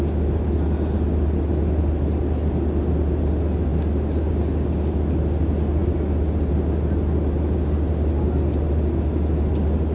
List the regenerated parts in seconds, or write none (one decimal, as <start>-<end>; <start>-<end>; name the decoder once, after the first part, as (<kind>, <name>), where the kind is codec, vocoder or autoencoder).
none